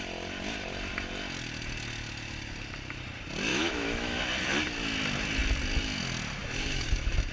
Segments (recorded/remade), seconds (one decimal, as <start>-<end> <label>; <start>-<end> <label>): 0.0-3.5 recorded; 3.5-4.2 remade; 4.2-6.4 recorded; 6.4-7.3 remade